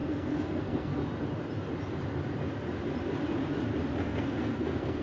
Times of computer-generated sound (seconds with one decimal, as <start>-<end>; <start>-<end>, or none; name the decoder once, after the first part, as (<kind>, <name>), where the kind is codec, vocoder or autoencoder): 0.0-1.0 (codec, SNAC); 4.0-5.0